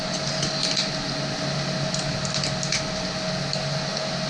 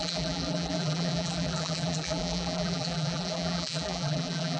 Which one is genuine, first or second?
first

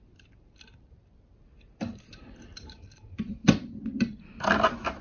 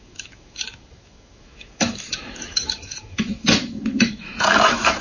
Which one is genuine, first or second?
first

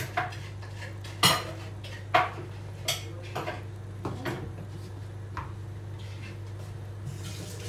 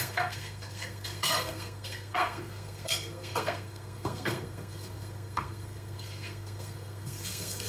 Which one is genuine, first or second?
first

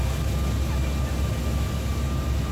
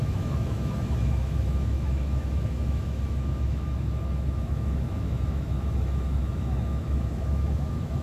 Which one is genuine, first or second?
first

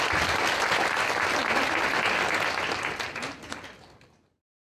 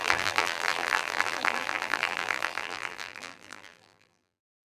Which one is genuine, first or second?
first